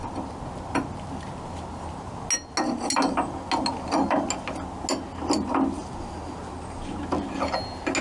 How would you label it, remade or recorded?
recorded